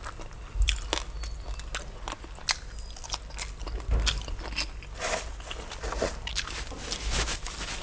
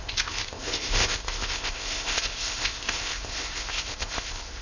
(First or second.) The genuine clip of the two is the first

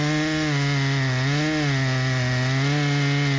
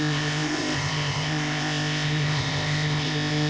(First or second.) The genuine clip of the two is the first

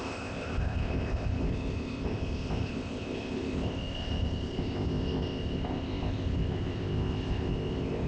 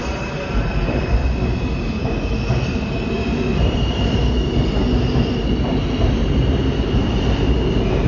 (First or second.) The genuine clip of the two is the second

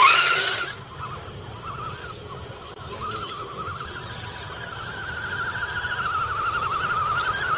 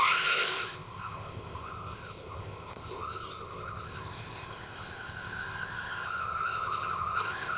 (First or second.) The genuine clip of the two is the first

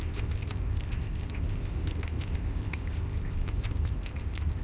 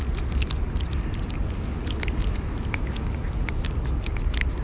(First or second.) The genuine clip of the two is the second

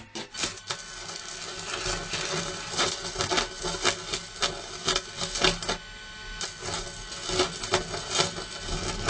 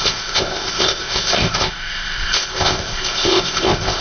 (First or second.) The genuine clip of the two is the first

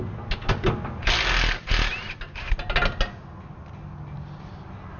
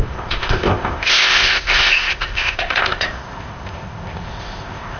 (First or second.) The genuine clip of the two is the first